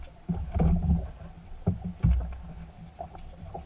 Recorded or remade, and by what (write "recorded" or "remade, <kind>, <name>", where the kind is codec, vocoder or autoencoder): recorded